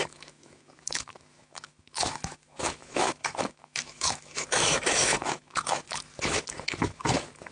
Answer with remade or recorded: remade